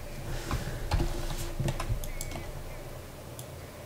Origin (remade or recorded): recorded